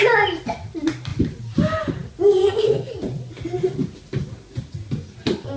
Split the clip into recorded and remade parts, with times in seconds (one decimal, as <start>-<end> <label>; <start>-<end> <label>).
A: 0.0-2.4 recorded; 2.4-2.9 remade; 2.9-5.6 recorded